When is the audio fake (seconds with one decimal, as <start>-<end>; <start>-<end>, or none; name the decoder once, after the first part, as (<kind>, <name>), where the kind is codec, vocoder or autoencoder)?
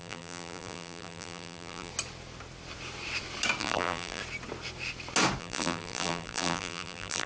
0.0-1.9 (vocoder, BigVGAN v2); 3.6-4.2; 5.4-7.3